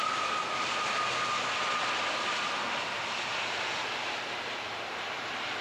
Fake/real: real